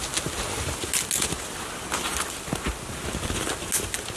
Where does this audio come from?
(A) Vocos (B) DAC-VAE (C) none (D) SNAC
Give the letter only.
C